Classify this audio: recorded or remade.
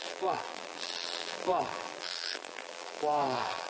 remade